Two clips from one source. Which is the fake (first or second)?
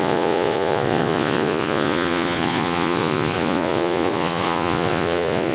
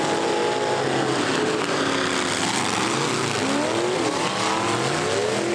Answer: first